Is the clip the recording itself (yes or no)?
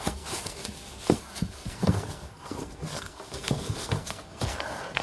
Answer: no